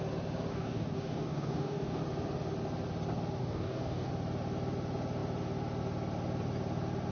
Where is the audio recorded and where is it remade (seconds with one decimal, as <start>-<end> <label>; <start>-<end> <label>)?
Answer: 0.0-0.5 recorded; 0.5-2.0 remade; 2.0-3.4 recorded; 3.4-4.1 remade; 4.1-7.1 recorded